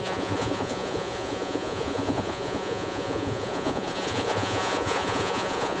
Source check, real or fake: fake